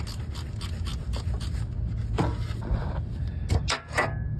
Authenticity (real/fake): real